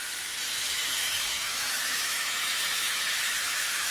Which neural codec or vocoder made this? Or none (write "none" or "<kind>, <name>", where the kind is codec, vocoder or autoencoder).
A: autoencoder, DAC-VAE